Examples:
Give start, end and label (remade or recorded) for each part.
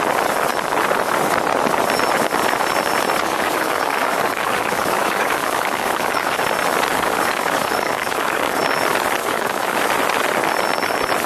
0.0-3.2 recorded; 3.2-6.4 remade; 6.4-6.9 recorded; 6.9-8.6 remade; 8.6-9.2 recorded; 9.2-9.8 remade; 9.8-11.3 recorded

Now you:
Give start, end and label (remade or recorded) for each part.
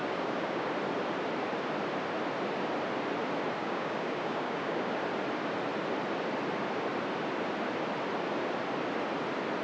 0.0-0.7 remade; 0.7-3.6 recorded; 3.6-4.9 remade; 4.9-9.6 recorded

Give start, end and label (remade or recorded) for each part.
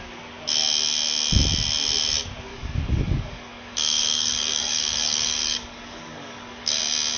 0.0-2.5 recorded; 2.5-6.8 remade; 6.8-7.2 recorded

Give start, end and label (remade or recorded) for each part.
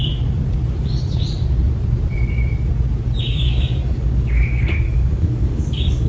0.0-3.2 recorded; 3.2-6.1 remade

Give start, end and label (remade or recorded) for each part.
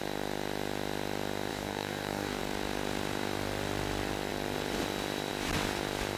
0.0-1.5 recorded; 1.5-2.4 remade; 2.4-6.2 recorded